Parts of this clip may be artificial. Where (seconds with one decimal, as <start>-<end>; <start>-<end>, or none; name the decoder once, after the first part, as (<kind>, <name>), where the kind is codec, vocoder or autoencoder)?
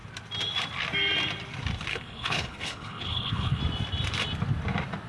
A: 1.9-3.6 (codec, HILCodec)